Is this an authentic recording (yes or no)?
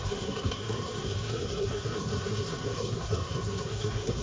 no